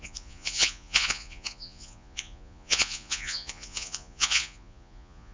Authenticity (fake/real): fake